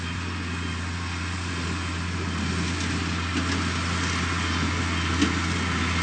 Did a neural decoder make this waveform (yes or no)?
no